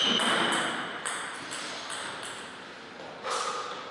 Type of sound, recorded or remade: recorded